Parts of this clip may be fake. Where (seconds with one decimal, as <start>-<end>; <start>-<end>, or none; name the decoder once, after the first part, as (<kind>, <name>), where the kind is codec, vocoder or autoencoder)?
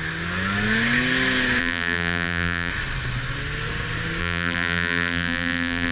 1.6-2.7 (vocoder, BigVGAN v2); 4.2-5.9